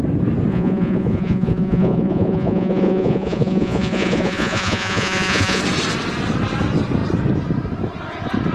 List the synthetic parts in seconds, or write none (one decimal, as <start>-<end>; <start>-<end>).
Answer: 0.5-5.6